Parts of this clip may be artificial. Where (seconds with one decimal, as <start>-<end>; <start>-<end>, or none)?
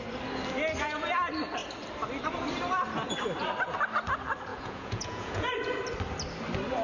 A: 4.5-5.5